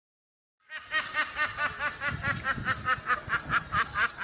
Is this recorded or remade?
recorded